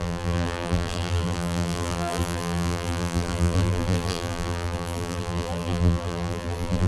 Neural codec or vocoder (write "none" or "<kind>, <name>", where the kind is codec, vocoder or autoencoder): vocoder, BigVGAN v2